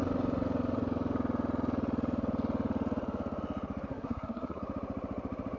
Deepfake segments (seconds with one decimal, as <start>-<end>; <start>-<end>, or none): 3.9-4.6